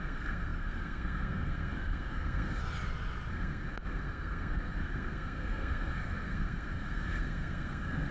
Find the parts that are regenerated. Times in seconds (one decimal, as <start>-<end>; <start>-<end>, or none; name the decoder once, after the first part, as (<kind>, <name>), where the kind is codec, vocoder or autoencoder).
0.0-2.6 (codec, SNAC); 3.3-8.1